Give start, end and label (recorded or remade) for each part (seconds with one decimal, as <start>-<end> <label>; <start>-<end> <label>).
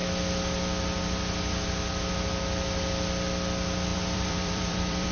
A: 0.0-3.9 recorded; 3.9-5.1 remade